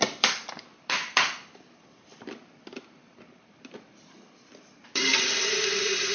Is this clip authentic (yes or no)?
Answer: no